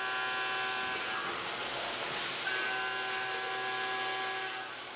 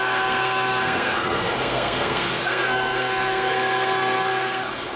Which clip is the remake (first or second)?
second